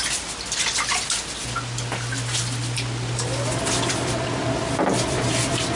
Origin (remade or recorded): recorded